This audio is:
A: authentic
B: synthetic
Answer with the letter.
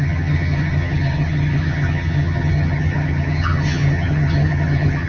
B